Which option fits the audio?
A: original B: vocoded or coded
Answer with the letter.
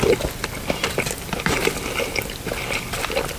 A